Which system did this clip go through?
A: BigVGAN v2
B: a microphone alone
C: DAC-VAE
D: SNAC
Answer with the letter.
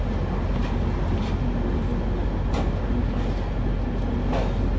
B